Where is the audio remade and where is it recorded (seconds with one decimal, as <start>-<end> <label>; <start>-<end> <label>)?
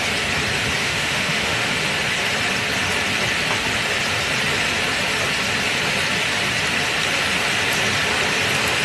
0.0-0.8 recorded; 0.8-1.7 remade; 1.7-8.8 recorded